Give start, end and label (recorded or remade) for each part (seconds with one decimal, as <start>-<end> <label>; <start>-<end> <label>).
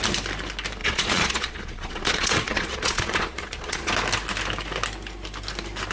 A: 0.0-0.8 recorded; 0.8-3.9 remade; 3.9-5.9 recorded